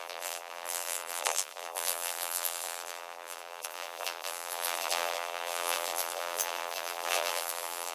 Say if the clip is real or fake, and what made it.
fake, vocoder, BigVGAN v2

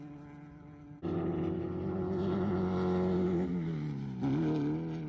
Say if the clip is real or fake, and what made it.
real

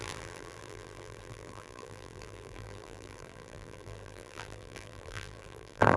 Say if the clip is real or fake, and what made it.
fake, vocoder, BigVGAN v2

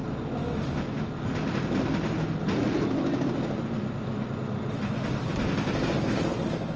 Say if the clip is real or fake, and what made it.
real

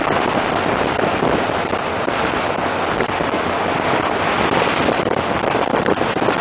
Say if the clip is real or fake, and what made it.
real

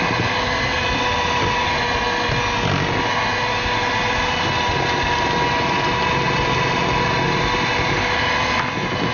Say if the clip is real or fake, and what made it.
real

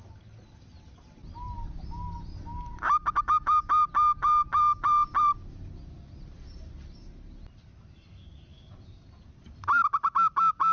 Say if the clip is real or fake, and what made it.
real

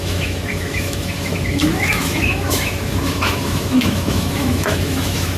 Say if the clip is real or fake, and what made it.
fake, autoencoder, DAC-VAE